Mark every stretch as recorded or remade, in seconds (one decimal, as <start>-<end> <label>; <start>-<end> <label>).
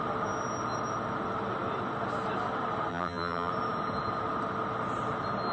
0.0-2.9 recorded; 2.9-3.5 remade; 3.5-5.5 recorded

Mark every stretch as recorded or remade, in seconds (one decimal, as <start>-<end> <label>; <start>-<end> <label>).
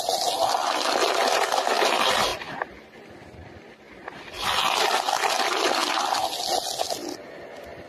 0.0-7.9 recorded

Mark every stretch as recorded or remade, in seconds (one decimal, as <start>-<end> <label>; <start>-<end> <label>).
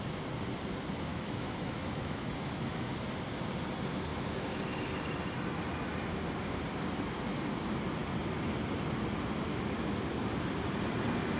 0.0-1.1 recorded; 1.1-2.9 remade; 2.9-4.1 recorded; 4.1-4.6 remade; 4.6-11.4 recorded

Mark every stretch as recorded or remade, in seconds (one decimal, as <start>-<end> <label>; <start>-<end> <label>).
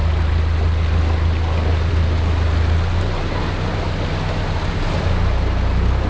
0.0-6.1 recorded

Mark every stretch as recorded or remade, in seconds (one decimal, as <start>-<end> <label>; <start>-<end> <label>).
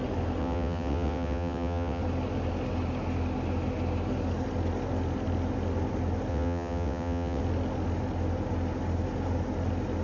0.0-0.4 recorded; 0.4-2.0 remade; 2.0-6.3 recorded; 6.3-7.4 remade; 7.4-10.0 recorded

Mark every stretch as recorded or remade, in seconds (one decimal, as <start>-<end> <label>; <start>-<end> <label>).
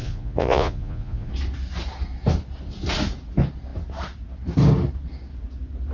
0.0-1.3 remade; 1.3-5.9 recorded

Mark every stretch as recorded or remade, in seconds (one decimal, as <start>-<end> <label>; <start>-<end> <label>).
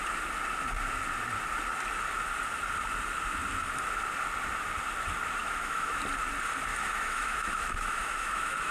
0.0-5.4 recorded; 5.4-6.0 remade; 6.0-6.7 recorded; 6.7-8.7 remade